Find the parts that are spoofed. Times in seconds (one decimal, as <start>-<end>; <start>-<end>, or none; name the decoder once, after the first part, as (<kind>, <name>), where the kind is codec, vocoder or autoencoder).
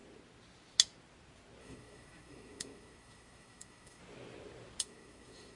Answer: 1.6-4.0 (autoencoder, DAC-VAE); 4.8-5.6